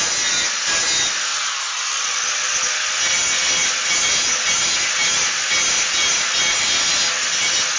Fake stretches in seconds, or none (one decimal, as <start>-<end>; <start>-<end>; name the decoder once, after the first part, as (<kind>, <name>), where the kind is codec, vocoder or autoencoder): none